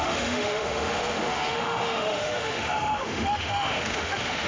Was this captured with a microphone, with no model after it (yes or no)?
no